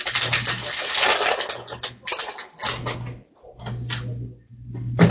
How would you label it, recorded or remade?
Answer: recorded